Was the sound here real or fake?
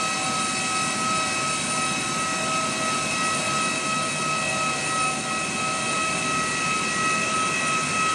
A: real